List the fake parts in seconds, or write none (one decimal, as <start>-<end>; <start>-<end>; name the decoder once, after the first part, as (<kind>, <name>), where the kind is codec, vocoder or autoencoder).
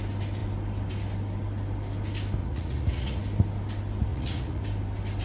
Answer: 2.4-3.2 (vocoder, Vocos); 4.1-4.6